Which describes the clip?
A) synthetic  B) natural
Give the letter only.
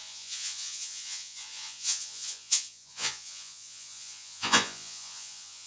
A